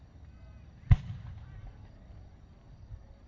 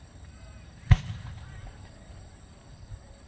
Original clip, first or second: first